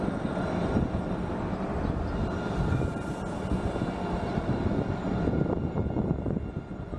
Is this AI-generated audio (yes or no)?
no